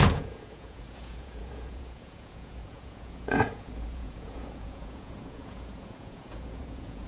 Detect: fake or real fake